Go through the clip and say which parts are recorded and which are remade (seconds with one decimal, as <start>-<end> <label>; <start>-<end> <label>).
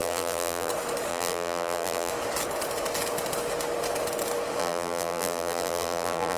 0.0-0.7 remade; 0.7-1.1 recorded; 1.1-2.1 remade; 2.1-4.6 recorded; 4.6-6.4 remade